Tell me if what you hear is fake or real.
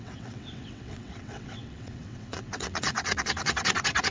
fake